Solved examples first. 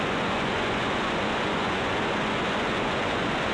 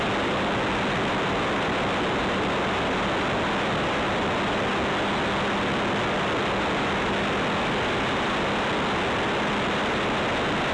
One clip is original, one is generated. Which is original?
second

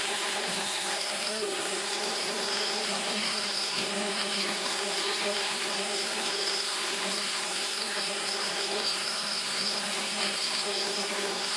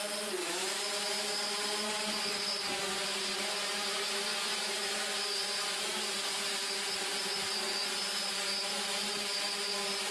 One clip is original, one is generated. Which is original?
second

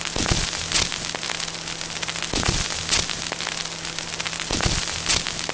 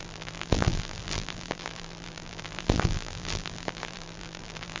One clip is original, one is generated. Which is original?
first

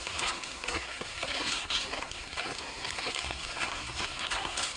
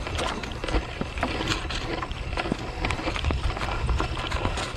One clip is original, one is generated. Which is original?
second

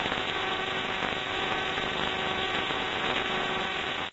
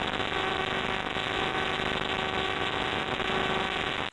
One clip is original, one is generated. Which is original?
second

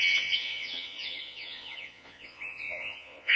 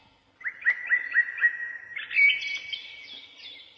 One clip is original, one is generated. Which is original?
second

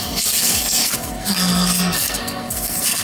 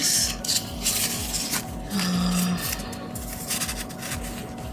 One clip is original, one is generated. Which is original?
second